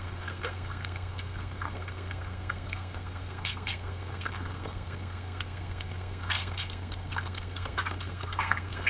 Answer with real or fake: fake